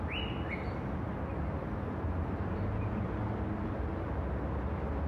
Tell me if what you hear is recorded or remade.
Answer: recorded